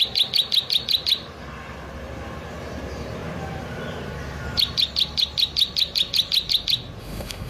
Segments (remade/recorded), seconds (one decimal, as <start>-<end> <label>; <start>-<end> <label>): 0.0-7.0 recorded; 7.0-7.5 remade